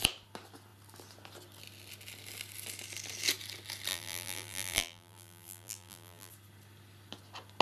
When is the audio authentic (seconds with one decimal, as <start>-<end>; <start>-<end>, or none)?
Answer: 0.0-3.9; 6.3-7.6